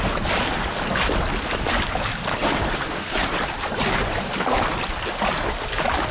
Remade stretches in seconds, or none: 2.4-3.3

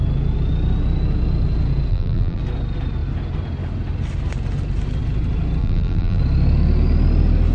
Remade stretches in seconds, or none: 1.9-2.4; 5.6-6.2